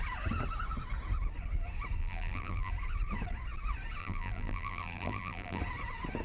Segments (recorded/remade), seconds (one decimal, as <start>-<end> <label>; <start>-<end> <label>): 0.0-2.0 recorded; 2.0-2.7 remade; 2.7-4.0 recorded; 4.0-5.6 remade; 5.6-6.2 recorded